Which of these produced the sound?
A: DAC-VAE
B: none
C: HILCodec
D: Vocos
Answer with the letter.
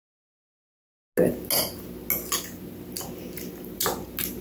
B